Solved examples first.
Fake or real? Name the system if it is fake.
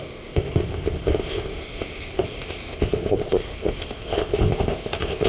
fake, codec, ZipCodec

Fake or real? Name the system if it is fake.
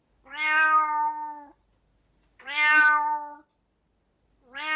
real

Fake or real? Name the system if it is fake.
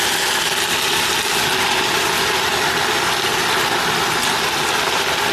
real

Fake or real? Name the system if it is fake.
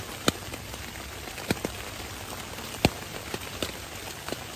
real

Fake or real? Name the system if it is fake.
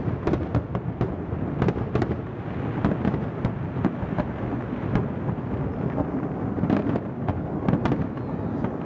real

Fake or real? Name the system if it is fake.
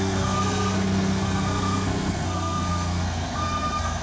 fake, codec, SNAC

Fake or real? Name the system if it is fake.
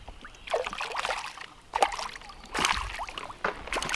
real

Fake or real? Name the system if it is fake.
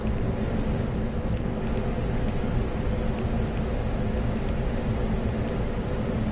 real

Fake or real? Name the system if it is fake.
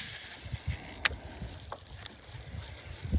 real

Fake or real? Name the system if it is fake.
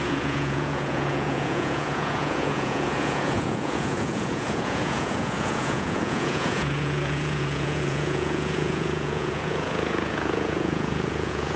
fake, vocoder, Vocos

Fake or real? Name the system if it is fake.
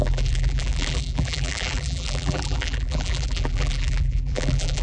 fake, vocoder, BigVGAN v2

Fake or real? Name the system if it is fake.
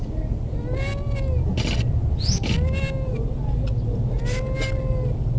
real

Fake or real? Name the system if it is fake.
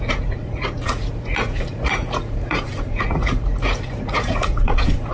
fake, vocoder, Vocos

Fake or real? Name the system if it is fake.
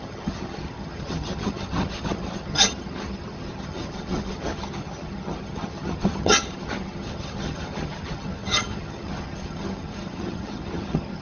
fake, vocoder, HiFi-GAN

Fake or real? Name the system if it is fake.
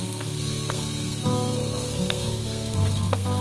fake, codec, SNAC